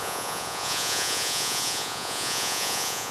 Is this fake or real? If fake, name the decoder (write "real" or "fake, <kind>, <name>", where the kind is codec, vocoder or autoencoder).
fake, vocoder, Vocos